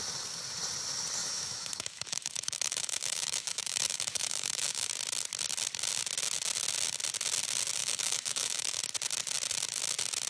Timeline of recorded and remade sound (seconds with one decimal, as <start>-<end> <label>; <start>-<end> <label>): 0.0-1.2 recorded; 1.2-4.9 remade; 4.9-7.8 recorded; 7.8-8.8 remade; 8.8-10.3 recorded

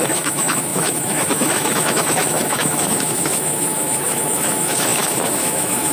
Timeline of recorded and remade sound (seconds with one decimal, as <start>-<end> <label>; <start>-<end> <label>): 0.0-5.9 remade

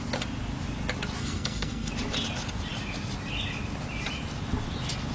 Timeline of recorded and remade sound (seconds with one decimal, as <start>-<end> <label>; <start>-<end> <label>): 0.0-1.2 recorded; 1.2-1.9 remade; 1.9-5.1 recorded

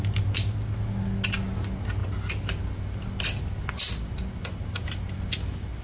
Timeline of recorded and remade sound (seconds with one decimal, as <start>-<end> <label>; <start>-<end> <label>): 0.0-5.8 recorded

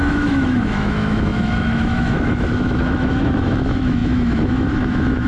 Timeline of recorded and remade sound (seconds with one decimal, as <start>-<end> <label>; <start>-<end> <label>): 0.0-5.3 remade

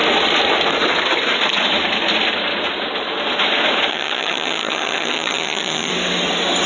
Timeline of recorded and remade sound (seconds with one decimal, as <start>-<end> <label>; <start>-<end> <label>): 0.0-3.9 recorded; 3.9-5.9 remade; 5.9-6.7 recorded

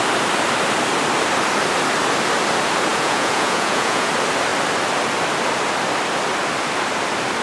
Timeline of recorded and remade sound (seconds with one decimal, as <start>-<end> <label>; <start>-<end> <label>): 0.0-2.9 recorded; 2.9-4.1 remade; 4.1-7.4 recorded